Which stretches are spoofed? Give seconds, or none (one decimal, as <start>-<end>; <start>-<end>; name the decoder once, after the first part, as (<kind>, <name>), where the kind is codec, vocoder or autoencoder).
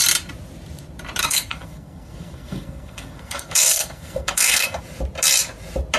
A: 1.2-4.8 (codec, SNAC)